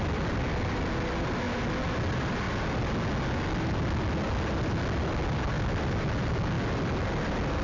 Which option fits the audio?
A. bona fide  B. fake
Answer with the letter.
A